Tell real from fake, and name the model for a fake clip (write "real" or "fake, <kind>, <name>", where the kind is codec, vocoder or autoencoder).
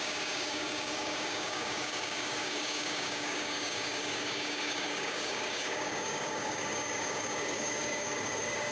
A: fake, codec, DAC